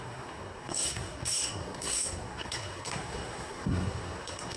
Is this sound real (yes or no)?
no